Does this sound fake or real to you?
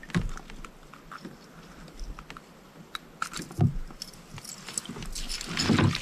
real